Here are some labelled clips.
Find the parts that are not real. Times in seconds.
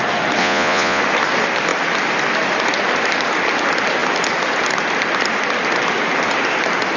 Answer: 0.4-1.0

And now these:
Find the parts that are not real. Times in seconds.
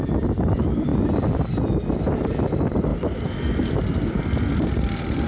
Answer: none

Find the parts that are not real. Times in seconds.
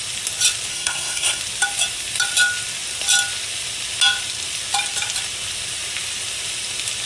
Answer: 0.7-1.4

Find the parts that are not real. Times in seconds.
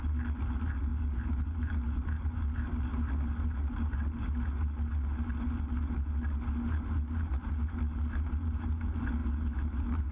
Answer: none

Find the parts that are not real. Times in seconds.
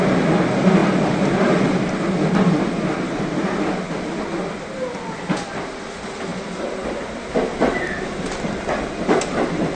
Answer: none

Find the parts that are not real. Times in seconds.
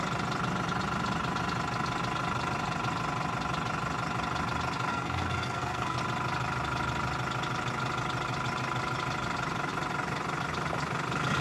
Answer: 4.9-6.0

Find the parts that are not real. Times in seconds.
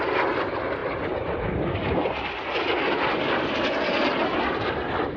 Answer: none